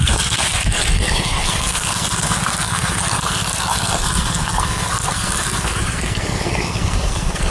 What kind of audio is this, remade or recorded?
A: remade